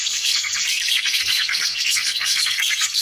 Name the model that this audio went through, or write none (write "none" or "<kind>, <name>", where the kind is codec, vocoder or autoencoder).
codec, SNAC